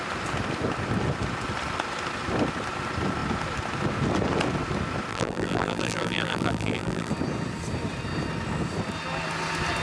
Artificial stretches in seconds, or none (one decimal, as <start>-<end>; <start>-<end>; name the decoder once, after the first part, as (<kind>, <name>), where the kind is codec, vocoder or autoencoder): 5.1-7.1 (vocoder, BigVGAN v2)